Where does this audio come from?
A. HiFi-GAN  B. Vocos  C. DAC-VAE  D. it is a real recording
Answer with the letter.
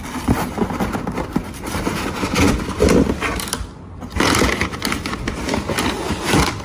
D